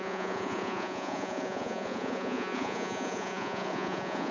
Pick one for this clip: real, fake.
fake